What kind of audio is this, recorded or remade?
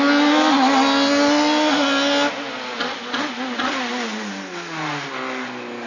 recorded